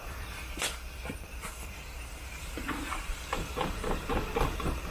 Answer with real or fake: fake